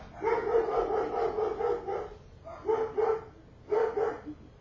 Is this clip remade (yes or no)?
no